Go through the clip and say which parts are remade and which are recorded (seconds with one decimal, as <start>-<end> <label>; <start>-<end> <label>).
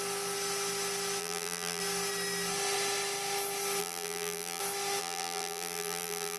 0.0-1.2 recorded; 1.2-1.8 remade; 1.8-3.8 recorded; 3.8-4.6 remade; 4.6-5.0 recorded; 5.0-6.4 remade